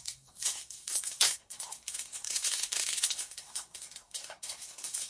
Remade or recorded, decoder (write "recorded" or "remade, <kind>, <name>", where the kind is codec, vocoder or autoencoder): remade, codec, SNAC